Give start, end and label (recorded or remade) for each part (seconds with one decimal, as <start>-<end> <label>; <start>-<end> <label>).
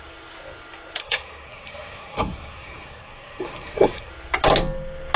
0.0-1.0 recorded; 1.0-4.1 remade; 4.1-5.2 recorded